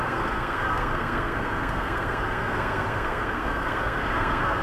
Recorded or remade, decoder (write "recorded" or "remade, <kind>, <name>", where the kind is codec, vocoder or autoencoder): remade, codec, SNAC